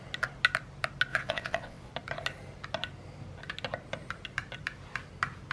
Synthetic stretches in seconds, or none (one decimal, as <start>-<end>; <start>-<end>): 1.1-1.9